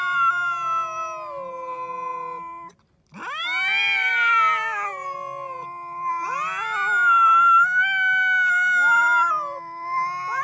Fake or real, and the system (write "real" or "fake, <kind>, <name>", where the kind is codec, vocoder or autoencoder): real